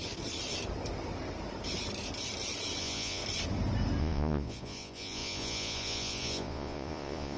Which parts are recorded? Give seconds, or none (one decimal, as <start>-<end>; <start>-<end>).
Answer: 0.0-2.8; 3.2-4.0

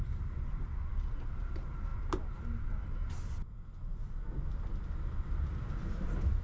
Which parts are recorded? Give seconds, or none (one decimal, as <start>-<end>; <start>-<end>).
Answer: 0.0-6.4

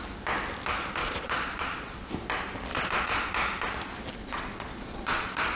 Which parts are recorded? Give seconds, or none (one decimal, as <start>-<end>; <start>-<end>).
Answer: 0.0-1.0; 2.1-2.7; 3.3-4.2

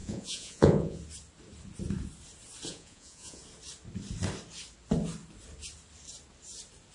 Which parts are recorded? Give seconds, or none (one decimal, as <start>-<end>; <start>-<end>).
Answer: 1.0-2.7; 3.4-6.9

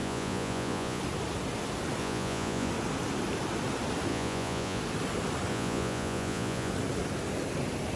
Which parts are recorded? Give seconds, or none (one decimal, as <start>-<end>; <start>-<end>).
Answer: 1.0-2.0; 2.7-4.1; 4.8-5.5; 6.7-8.0

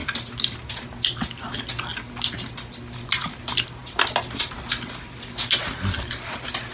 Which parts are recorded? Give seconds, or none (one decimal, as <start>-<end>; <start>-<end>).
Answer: 0.0-6.7

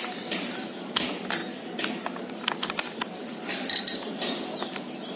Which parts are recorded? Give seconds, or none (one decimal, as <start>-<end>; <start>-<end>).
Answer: 0.0-5.2